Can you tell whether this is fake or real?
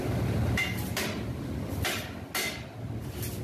real